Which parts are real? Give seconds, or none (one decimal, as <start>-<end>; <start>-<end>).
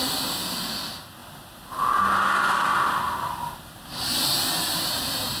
0.0-5.4